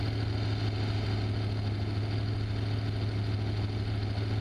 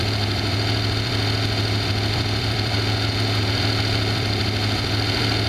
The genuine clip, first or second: first